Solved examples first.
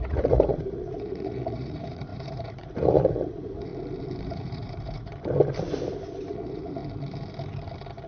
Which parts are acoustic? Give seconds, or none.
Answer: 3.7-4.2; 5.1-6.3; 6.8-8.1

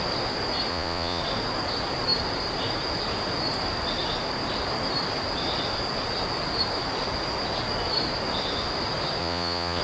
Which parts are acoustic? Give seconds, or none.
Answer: 0.0-0.7; 1.2-9.2

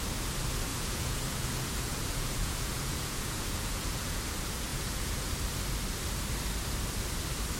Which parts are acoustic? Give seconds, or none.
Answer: 0.0-0.7; 4.2-4.7; 5.3-7.6

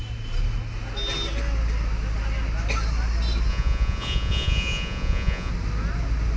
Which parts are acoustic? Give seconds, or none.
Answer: 0.0-3.5; 5.5-6.4

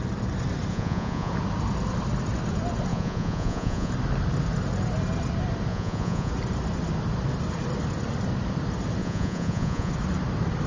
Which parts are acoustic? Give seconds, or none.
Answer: 0.0-0.7; 1.3-2.9; 3.9-5.7; 6.3-9.0; 9.9-10.7